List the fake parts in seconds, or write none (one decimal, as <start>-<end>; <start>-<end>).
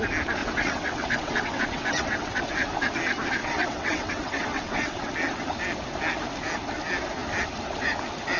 0.4-2.4; 3.4-5.1